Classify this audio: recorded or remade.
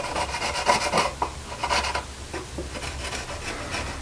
recorded